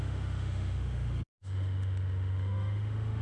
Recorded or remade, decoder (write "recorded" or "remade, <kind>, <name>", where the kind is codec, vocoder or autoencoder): remade, autoencoder, DAC-VAE